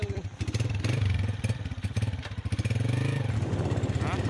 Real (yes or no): no